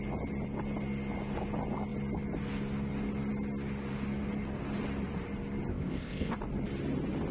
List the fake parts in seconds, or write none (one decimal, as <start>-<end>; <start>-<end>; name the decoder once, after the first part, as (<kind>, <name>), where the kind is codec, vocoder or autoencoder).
5.7-6.3 (codec, ZipCodec)